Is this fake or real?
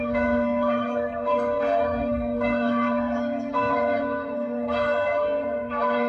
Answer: fake